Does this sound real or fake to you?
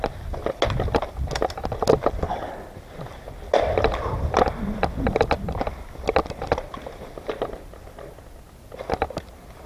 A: real